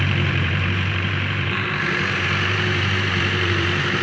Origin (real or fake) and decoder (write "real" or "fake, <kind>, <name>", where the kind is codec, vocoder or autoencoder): fake, vocoder, BigVGAN v2